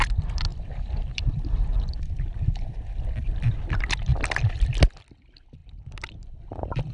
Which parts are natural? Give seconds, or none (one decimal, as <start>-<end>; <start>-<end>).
0.0-0.5; 4.6-6.9